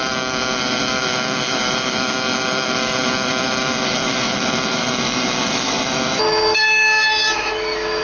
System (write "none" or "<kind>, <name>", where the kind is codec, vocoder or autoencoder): autoencoder, DAC-VAE